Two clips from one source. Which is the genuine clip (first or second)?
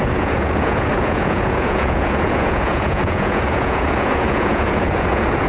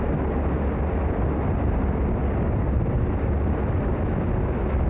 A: second